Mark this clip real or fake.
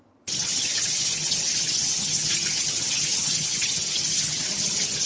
fake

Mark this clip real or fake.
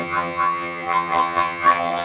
fake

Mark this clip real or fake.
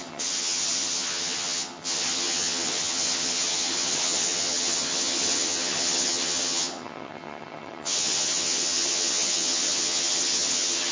fake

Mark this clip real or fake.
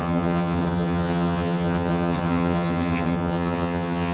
fake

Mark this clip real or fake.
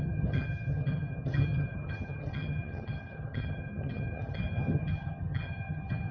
fake